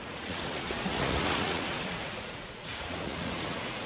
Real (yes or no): no